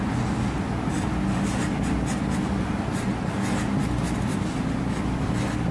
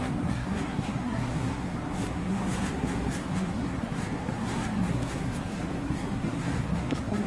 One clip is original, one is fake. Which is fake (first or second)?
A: second